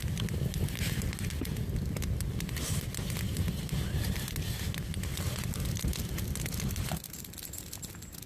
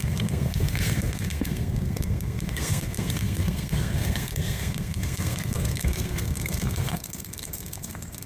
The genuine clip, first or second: first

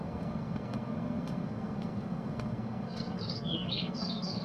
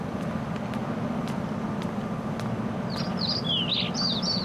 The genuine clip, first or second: second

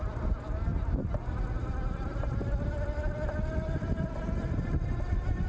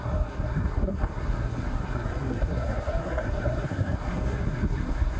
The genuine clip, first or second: first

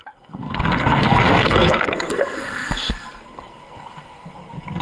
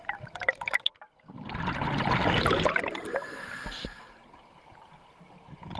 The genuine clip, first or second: second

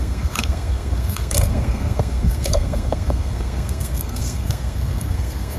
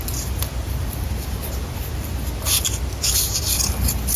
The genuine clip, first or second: second